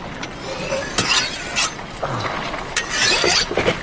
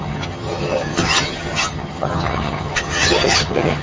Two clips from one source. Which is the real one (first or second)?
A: first